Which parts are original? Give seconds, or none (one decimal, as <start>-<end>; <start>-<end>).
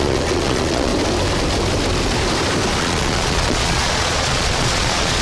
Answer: 0.9-2.8